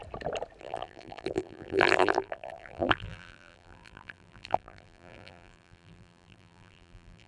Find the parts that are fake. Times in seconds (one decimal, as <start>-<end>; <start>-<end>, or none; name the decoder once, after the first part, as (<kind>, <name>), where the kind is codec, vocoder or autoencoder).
0.6-7.3 (vocoder, BigVGAN v2)